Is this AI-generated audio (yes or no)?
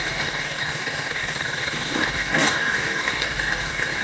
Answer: yes